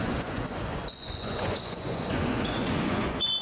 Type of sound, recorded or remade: remade